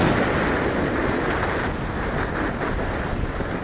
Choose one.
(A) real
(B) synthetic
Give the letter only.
A